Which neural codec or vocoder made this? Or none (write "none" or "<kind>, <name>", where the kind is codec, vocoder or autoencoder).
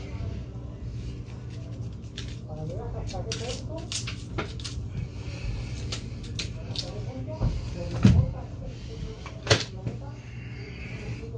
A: none